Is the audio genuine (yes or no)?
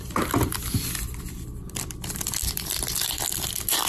no